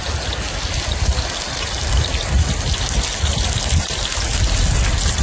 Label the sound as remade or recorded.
recorded